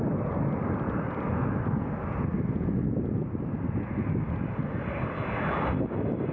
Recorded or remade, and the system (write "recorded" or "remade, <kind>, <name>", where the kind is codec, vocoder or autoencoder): recorded